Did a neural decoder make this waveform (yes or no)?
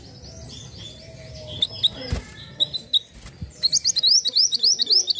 no